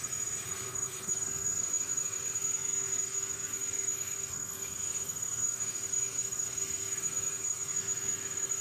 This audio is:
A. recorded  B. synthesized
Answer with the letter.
B